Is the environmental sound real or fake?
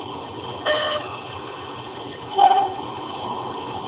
fake